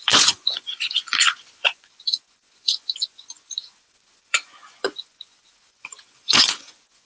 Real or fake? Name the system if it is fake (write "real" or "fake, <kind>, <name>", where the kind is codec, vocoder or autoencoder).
fake, vocoder, Vocos